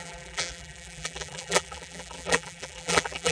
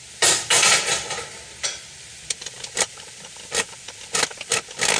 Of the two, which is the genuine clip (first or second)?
second